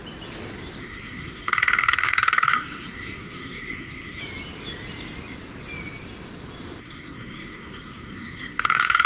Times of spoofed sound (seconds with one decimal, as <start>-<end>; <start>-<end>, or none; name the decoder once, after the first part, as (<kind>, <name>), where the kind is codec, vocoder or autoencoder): 0.8-4.2 (codec, SNAC); 6.8-9.1